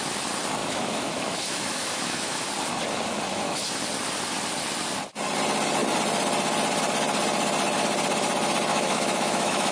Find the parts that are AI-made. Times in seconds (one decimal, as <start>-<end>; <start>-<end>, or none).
0.6-2.5; 3.3-3.8; 8.7-9.7